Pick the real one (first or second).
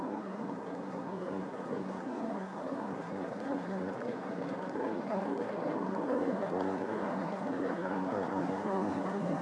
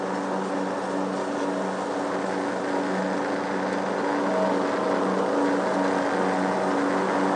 second